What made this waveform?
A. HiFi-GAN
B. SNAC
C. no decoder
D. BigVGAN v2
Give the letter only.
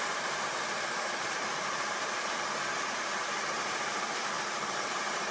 D